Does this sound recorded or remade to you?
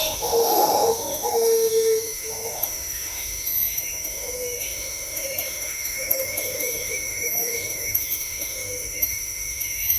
remade